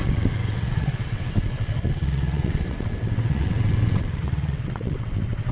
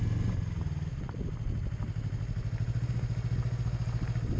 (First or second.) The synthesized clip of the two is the first